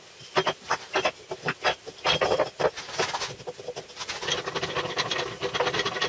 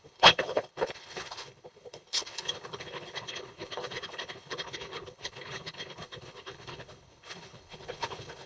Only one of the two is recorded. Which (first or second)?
first